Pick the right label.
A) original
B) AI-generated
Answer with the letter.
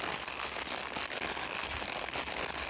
A